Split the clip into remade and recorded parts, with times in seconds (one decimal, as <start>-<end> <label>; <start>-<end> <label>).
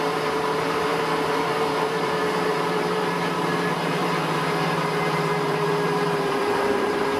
0.0-4.0 remade; 4.0-4.6 recorded; 4.6-7.2 remade